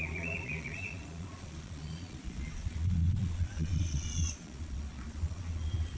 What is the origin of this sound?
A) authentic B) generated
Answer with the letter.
B